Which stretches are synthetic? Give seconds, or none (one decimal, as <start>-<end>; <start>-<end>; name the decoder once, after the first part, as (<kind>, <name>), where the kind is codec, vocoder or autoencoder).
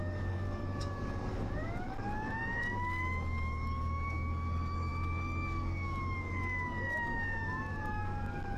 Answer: 0.0-8.6 (codec, DAC)